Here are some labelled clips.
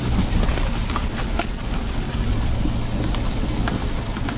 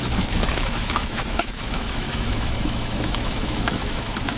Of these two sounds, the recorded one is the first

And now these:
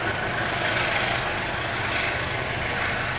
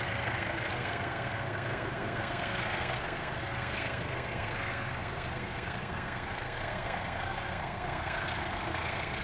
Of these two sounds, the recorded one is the first